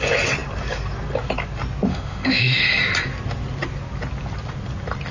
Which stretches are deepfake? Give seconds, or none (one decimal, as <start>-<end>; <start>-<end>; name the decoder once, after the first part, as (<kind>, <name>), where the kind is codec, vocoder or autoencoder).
1.9-2.6 (autoencoder, DAC-VAE)